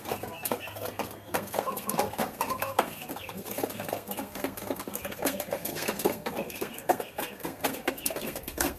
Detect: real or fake fake